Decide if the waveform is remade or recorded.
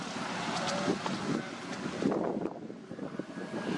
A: recorded